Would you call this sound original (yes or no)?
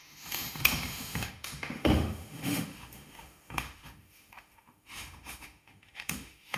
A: no